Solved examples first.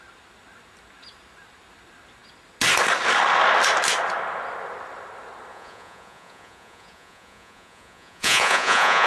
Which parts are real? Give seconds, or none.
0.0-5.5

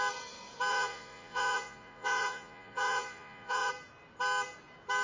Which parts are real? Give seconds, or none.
0.0-0.7; 3.7-5.0

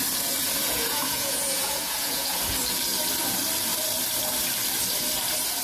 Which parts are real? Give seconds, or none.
0.0-0.6; 2.4-5.6